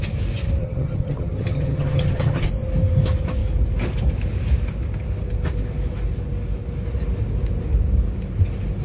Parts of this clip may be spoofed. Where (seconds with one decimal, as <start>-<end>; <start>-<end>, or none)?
0.6-2.5